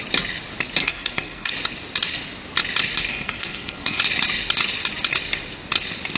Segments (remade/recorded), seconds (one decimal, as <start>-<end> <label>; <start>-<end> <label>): 0.0-0.8 recorded; 0.8-1.5 remade; 1.5-3.1 recorded; 3.1-4.0 remade; 4.0-6.2 recorded